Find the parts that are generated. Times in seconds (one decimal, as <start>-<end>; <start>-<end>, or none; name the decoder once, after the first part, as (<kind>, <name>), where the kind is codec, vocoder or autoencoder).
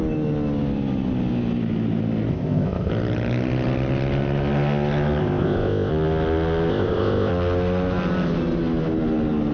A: 2.3-2.9 (codec, ZipCodec); 5.2-5.9; 6.7-7.3